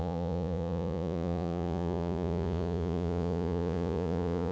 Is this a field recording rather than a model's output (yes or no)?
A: no